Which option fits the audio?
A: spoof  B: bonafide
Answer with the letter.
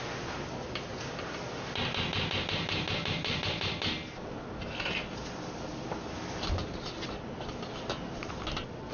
B